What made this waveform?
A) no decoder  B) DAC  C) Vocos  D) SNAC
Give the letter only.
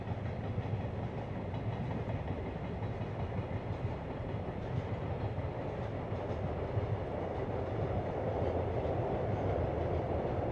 A